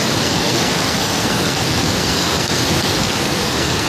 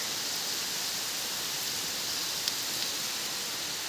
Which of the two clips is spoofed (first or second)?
first